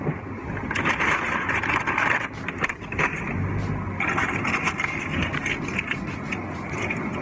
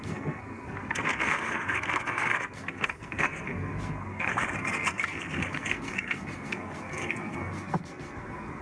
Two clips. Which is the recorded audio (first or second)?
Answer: first